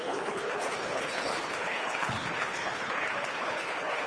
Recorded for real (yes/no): no